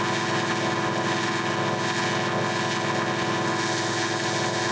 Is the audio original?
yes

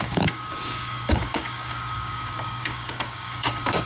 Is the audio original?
no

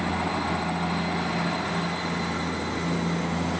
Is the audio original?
yes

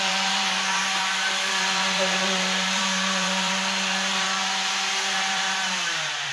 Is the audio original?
no